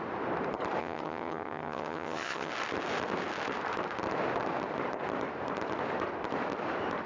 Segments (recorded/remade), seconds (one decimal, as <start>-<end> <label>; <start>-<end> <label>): 0.0-0.8 recorded; 0.8-2.5 remade; 2.5-7.1 recorded